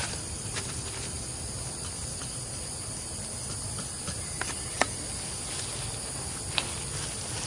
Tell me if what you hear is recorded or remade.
recorded